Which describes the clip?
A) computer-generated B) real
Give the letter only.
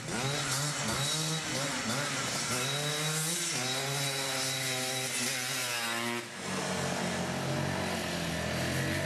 B